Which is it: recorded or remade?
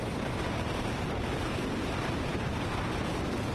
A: remade